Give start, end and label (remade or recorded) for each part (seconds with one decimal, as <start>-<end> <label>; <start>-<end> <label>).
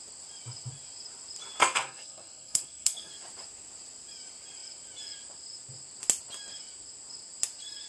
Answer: 0.0-1.6 recorded; 1.6-3.1 remade; 3.1-7.9 recorded